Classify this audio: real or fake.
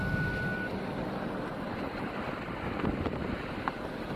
real